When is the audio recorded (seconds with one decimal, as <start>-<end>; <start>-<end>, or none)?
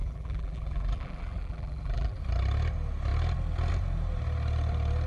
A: 2.2-5.1